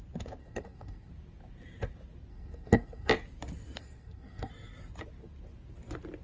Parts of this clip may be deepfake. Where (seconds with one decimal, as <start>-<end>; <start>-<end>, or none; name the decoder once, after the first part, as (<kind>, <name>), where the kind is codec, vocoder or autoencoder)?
0.4-1.1 (codec, SNAC); 2.3-3.1; 3.8-4.5